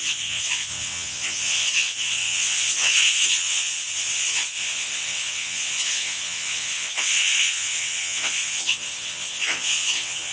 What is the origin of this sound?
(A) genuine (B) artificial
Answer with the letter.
B